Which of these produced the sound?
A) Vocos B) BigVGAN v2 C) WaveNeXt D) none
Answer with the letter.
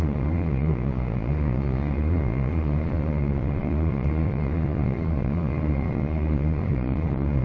A